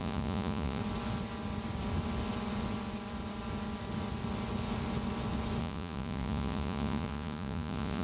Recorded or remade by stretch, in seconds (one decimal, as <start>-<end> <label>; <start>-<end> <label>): 0.0-0.8 remade; 0.8-5.6 recorded; 5.6-8.0 remade